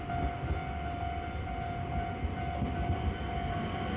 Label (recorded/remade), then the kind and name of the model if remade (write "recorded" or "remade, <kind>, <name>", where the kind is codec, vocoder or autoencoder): recorded